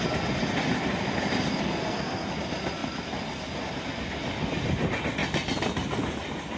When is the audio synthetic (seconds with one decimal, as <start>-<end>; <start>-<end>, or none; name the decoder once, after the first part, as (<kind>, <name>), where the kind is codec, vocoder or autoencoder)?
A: 1.8-2.3 (codec, SNAC)